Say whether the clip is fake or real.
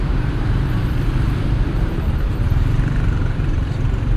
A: fake